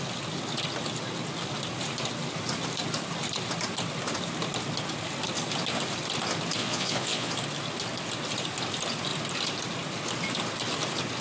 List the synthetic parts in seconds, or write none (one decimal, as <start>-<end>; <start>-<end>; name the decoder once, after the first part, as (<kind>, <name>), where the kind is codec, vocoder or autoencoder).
6.6-7.3 (vocoder, Vocos)